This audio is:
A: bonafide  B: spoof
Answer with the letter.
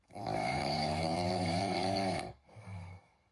B